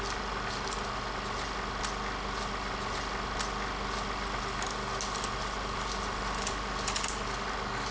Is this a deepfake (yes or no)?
no